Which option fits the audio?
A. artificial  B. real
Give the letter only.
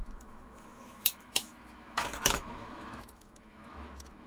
A